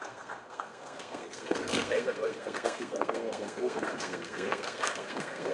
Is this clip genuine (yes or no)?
no